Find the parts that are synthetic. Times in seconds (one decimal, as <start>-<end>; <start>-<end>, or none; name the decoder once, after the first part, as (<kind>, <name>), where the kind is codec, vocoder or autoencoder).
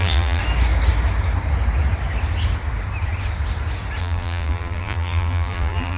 0.0-0.4 (vocoder, BigVGAN v2); 4.0-6.0